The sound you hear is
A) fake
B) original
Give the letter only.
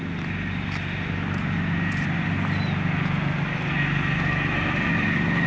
B